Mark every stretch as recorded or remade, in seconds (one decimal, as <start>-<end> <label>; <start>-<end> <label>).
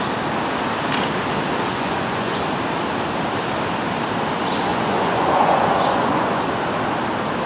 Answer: 0.0-1.7 recorded; 1.7-2.4 remade; 2.4-4.7 recorded; 4.7-6.4 remade; 6.4-7.5 recorded